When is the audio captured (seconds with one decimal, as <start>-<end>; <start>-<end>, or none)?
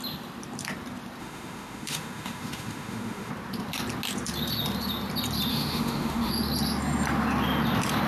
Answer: 0.0-1.2; 3.3-5.5; 6.3-8.1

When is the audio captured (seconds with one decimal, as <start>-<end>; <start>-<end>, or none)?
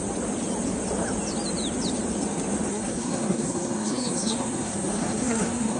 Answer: 0.0-2.7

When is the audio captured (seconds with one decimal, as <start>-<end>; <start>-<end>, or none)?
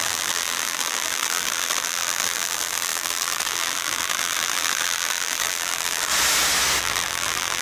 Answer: 6.1-6.8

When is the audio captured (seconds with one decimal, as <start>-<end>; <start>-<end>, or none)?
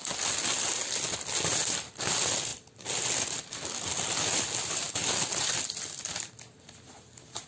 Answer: 0.0-7.5